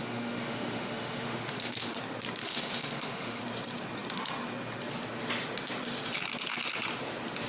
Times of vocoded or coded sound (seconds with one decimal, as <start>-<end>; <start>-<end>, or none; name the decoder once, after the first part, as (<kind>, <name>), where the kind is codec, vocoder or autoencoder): 0.0-2.0 (autoencoder, DAC-VAE); 2.4-3.4